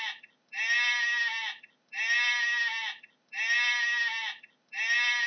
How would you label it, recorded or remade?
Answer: recorded